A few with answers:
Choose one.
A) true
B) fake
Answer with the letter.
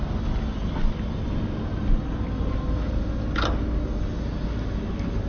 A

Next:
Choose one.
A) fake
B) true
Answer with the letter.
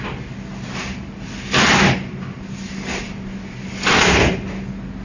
B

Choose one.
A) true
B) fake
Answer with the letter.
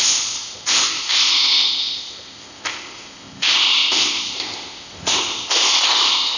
B